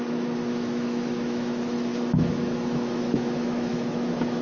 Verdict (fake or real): fake